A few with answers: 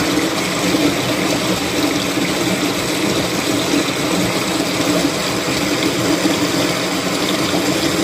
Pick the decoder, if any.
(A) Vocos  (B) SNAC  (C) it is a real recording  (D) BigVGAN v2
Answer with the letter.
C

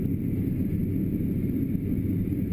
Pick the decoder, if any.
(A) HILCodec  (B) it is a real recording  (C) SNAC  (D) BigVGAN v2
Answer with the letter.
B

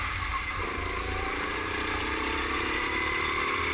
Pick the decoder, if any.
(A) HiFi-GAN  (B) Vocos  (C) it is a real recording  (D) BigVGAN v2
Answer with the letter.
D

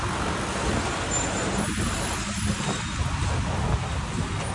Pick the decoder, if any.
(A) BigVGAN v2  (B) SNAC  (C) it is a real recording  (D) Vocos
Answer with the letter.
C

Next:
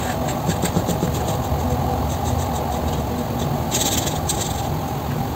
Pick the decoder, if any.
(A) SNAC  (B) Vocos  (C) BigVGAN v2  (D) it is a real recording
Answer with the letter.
D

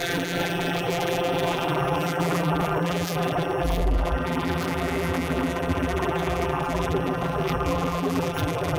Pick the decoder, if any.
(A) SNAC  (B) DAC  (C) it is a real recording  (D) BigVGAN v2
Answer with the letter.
D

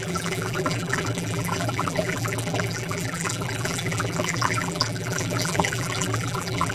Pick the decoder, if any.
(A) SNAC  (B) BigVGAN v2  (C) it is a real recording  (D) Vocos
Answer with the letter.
B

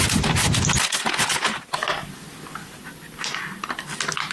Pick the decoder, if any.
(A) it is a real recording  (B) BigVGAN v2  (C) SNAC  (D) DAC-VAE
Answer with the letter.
A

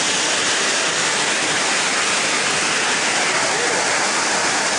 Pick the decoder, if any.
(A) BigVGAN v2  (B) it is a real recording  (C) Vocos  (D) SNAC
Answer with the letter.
B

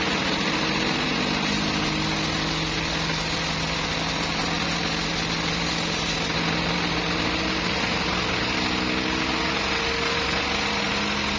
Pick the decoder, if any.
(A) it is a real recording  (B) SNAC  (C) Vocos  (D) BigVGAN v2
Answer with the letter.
A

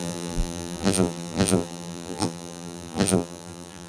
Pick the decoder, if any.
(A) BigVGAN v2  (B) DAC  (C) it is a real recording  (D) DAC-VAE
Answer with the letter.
A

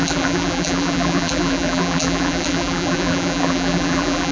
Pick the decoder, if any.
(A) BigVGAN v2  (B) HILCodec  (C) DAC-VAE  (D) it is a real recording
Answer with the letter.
A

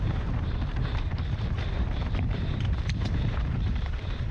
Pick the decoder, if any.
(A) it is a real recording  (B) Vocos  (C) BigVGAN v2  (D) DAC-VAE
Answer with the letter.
C